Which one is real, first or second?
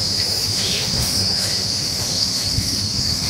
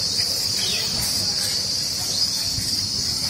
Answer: second